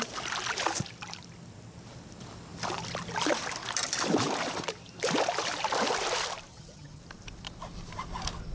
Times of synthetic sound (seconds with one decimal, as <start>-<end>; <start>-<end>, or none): 6.5-7.0